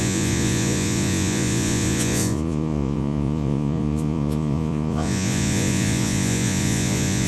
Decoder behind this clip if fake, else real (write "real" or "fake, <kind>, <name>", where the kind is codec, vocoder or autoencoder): fake, vocoder, Vocos